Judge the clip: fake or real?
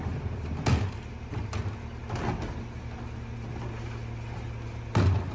real